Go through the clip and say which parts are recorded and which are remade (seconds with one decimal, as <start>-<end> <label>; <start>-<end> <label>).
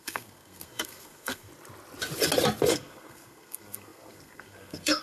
0.0-1.5 remade; 1.5-2.7 recorded; 2.7-5.0 remade